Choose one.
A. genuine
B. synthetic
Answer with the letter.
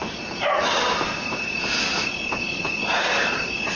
A